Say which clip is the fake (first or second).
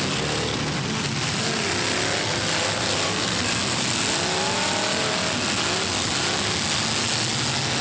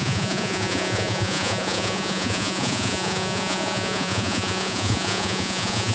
second